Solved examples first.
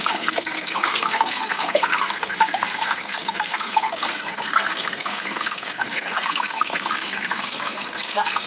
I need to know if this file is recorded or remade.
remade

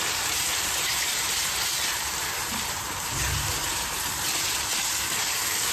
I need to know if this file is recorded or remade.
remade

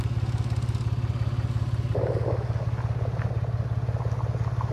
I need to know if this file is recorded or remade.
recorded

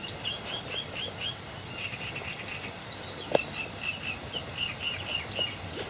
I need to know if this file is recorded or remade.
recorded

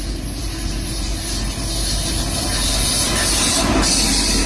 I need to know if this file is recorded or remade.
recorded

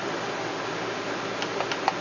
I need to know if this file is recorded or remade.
recorded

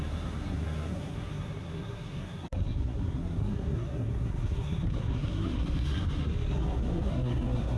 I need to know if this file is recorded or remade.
remade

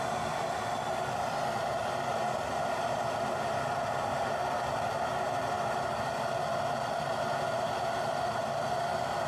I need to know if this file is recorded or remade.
recorded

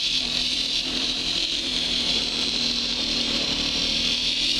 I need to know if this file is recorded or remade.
remade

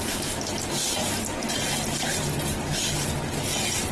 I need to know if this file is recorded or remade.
recorded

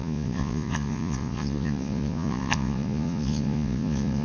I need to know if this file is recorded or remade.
remade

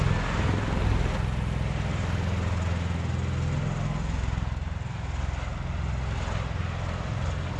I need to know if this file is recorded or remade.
recorded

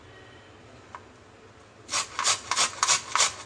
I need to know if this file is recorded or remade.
recorded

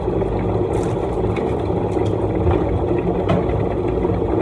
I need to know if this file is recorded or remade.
recorded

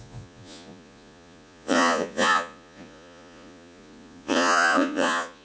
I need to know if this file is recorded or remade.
remade